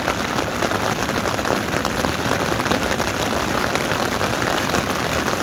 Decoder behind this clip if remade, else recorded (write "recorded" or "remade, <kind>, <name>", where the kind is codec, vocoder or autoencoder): recorded